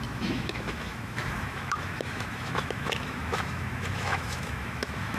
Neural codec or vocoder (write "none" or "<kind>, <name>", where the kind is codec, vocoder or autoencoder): autoencoder, DAC-VAE